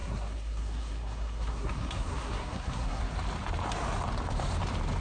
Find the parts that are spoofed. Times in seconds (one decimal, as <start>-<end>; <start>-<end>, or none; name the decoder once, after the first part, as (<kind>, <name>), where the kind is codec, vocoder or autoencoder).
0.0-3.0 (codec, SNAC)